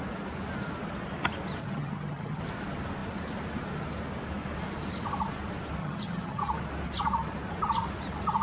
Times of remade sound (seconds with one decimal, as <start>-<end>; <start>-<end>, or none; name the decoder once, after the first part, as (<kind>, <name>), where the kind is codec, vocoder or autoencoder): 1.6-2.4 (vocoder, HiFi-GAN); 5.8-6.4